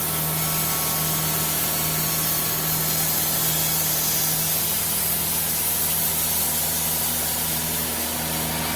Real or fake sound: real